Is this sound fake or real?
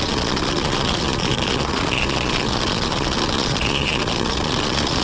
fake